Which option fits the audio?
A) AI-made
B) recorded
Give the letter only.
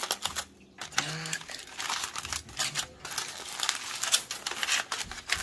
B